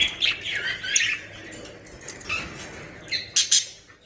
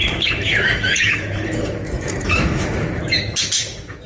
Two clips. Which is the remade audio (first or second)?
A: second